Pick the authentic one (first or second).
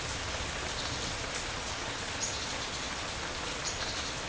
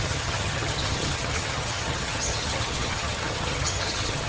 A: first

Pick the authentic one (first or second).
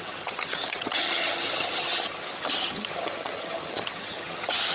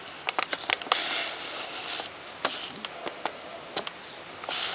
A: second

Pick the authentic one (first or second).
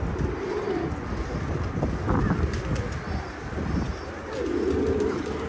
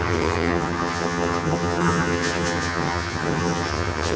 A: first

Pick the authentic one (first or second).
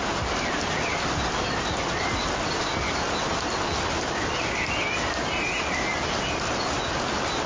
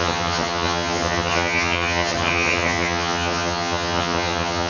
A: first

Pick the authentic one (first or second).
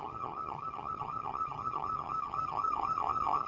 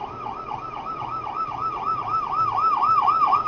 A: second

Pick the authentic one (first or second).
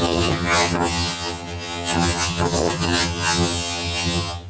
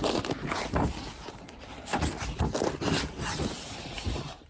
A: second